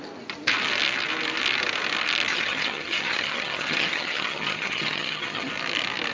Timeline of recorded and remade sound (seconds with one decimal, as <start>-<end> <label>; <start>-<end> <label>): 0.0-2.3 recorded; 2.3-5.5 remade; 5.5-6.1 recorded